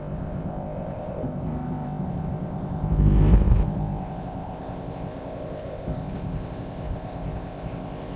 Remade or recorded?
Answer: remade